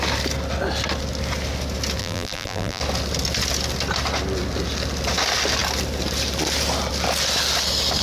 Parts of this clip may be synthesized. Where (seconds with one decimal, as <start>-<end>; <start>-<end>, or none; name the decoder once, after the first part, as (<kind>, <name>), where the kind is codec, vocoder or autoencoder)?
2.0-2.8 (vocoder, BigVGAN v2)